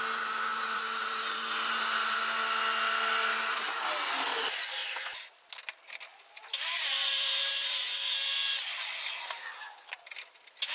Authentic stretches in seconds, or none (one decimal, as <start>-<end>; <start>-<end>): 0.0-0.5; 1.4-4.8; 5.4-6.1; 7.8-10.7